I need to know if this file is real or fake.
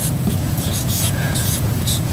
fake